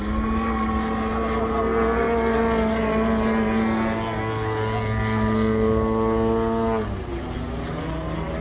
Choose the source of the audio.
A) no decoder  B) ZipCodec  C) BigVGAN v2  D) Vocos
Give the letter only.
A